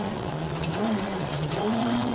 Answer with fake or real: fake